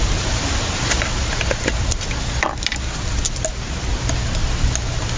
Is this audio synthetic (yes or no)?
no